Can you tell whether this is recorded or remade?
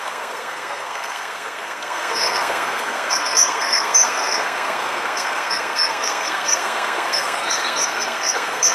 remade